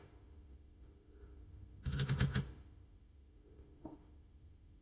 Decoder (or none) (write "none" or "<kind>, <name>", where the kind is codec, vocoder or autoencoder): autoencoder, DAC-VAE